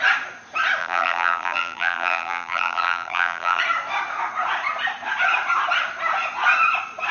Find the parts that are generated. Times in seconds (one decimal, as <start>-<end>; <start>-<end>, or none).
0.8-3.6